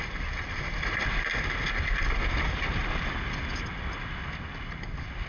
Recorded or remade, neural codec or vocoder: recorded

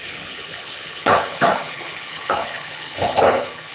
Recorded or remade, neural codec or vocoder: remade, codec, HILCodec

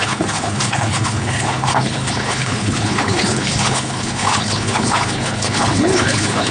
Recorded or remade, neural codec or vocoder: remade, codec, HILCodec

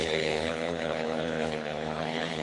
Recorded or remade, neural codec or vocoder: remade, codec, HILCodec